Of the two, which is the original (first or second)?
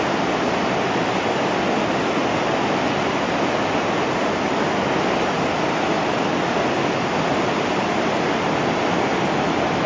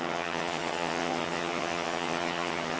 first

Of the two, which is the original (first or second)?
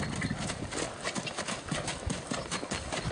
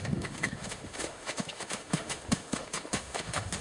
first